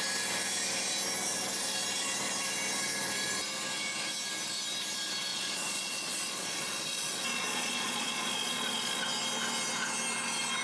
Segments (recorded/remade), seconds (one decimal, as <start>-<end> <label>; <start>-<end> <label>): 0.0-5.3 recorded; 5.3-9.0 remade; 9.0-10.6 recorded